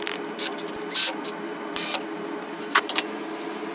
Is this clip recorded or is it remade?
recorded